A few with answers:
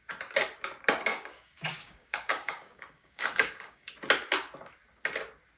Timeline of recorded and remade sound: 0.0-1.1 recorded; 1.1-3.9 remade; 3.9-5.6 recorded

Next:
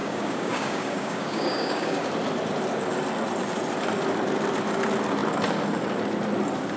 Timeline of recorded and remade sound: 0.0-2.1 remade; 2.1-6.8 recorded